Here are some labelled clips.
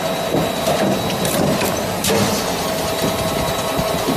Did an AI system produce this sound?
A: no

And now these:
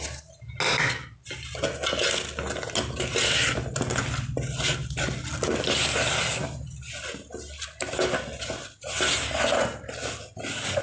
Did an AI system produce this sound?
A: no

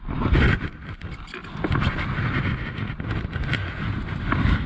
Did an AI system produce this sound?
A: no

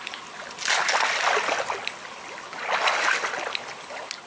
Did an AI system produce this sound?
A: no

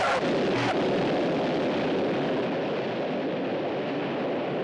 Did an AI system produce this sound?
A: no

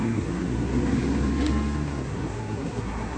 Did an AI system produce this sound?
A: yes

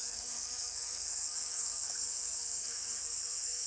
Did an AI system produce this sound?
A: yes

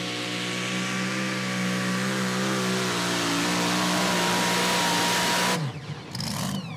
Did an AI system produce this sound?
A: no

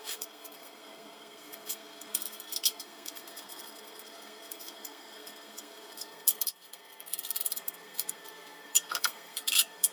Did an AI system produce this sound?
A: yes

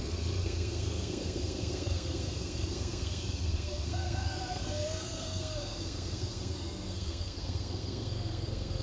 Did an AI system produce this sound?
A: yes